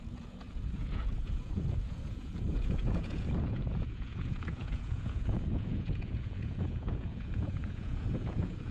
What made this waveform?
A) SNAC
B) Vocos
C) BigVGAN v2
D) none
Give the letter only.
B